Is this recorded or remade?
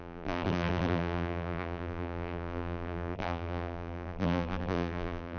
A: remade